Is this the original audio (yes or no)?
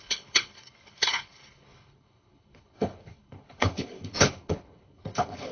no